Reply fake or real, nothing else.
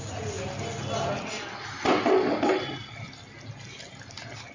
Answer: real